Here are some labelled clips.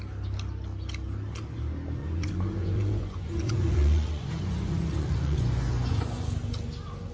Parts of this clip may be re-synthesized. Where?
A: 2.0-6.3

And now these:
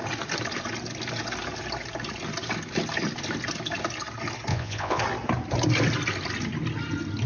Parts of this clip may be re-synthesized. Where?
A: 4.5-5.0

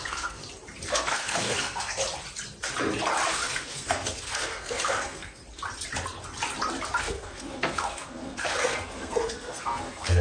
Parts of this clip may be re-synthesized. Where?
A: 0.0-0.4; 0.9-2.0; 3.3-5.4; 7.0-10.2

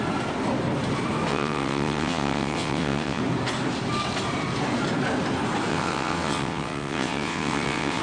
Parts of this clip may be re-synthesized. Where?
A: 1.3-3.2; 5.7-8.0

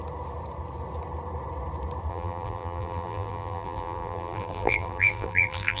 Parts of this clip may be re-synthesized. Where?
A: 2.1-5.8

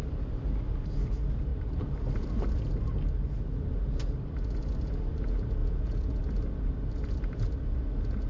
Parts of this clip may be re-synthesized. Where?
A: 5.6-6.2

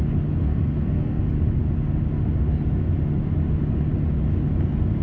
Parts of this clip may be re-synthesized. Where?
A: 0.4-1.2